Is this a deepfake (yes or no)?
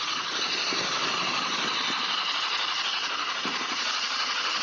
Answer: no